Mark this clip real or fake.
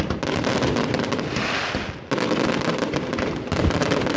real